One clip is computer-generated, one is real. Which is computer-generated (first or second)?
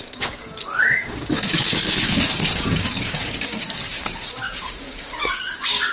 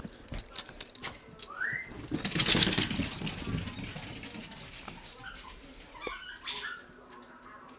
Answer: first